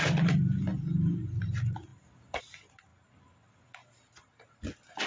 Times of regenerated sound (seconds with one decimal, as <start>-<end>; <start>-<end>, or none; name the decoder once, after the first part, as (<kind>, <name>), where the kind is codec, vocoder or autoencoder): 0.0-0.7 (vocoder, BigVGAN v2); 1.4-1.9; 2.4-2.9